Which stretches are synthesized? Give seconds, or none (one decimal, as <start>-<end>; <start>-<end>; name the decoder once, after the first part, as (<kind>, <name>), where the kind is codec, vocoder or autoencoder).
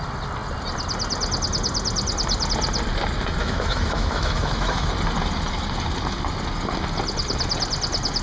3.4-4.9 (autoencoder, DAC-VAE)